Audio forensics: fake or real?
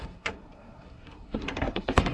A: fake